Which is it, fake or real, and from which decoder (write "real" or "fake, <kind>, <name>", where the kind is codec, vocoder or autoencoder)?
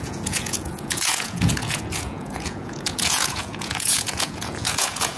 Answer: fake, vocoder, Vocos